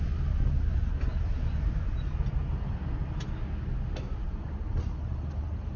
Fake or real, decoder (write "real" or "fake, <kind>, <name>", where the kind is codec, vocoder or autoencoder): real